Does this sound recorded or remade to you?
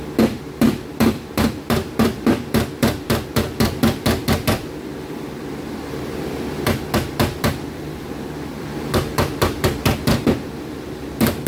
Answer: remade